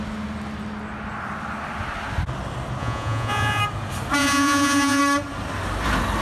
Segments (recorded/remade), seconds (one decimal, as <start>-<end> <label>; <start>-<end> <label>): 0.0-2.8 recorded; 2.8-3.6 remade; 3.6-4.2 recorded; 4.2-5.0 remade; 5.0-6.2 recorded